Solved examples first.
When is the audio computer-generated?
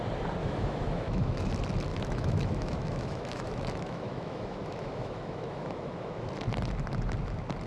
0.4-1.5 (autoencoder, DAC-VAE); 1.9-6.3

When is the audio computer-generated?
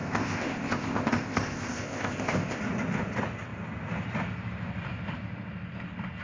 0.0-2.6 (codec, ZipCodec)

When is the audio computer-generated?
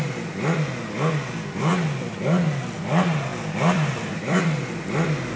3.3-4.7 (vocoder, BigVGAN v2)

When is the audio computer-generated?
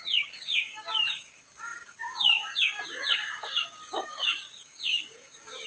0.0-5.7 (codec, DAC)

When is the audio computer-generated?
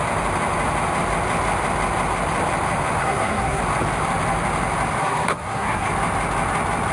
3.0-3.6 (codec, SNAC); 5.0-5.9